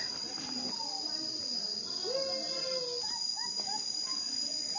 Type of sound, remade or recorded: recorded